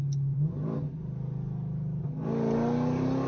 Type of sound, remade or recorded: recorded